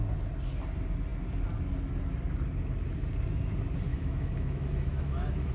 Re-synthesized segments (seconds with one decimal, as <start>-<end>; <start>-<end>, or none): 3.9-5.5